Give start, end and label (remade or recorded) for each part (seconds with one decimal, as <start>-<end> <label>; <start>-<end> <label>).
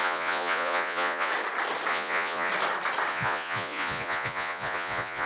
0.0-1.3 remade; 1.3-1.9 recorded; 1.9-2.5 remade; 2.5-3.1 recorded; 3.1-5.3 remade